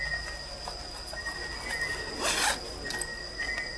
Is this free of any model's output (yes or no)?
yes